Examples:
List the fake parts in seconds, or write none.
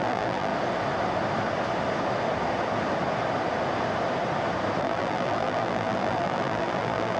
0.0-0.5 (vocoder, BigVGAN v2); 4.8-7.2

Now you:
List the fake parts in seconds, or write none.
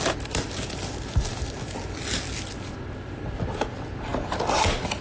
none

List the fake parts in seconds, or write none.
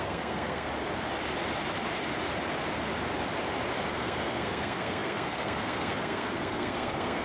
0.0-0.7 (codec, SNAC); 3.9-7.2